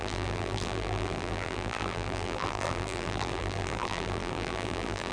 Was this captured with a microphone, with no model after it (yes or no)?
no